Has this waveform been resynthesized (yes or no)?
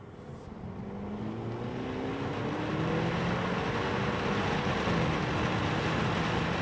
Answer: no